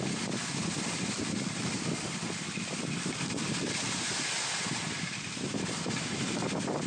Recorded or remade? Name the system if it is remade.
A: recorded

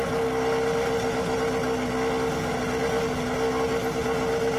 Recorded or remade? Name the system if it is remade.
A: recorded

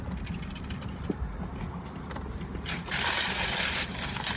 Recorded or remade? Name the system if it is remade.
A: recorded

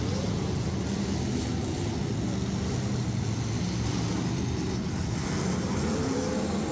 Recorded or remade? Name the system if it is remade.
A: recorded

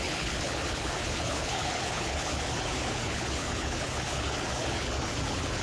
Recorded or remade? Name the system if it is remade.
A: remade, codec, HILCodec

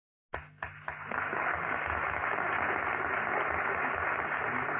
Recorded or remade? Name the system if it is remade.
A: recorded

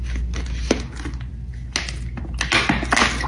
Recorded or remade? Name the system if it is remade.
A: recorded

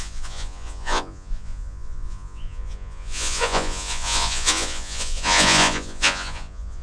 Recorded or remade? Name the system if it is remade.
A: remade, vocoder, Vocos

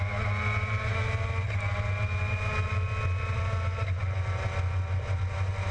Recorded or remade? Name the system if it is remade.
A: recorded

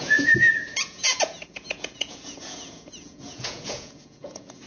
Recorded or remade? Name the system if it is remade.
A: remade, vocoder, Vocos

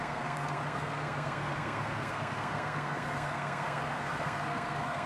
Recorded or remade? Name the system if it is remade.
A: remade, codec, SNAC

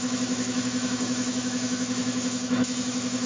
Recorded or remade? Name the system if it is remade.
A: remade, autoencoder, DAC-VAE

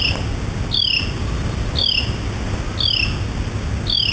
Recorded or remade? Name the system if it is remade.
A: recorded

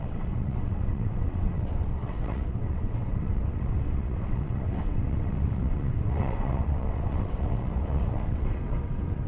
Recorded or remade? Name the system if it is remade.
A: remade, vocoder, WaveNeXt